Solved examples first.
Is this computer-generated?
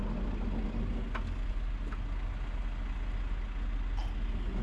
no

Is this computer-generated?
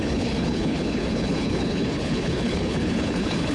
yes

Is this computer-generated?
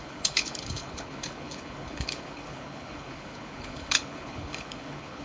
yes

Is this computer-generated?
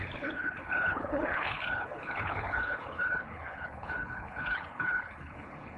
yes